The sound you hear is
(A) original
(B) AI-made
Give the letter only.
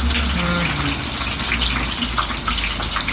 A